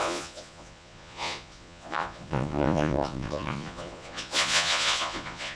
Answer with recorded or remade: remade